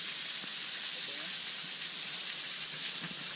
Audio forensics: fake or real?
real